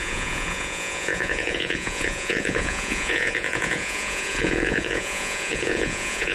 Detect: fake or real fake